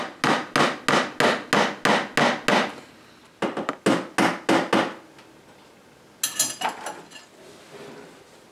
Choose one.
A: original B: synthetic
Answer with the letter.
A